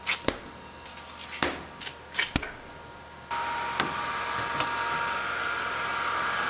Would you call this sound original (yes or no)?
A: yes